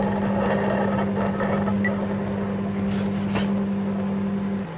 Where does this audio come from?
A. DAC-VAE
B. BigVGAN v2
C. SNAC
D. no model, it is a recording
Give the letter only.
D